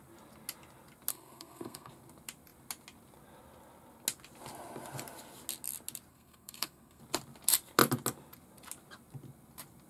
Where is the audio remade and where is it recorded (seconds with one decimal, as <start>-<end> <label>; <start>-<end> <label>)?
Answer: 0.0-1.1 recorded; 1.1-1.9 remade; 1.9-6.1 recorded; 6.1-7.0 remade; 7.0-9.9 recorded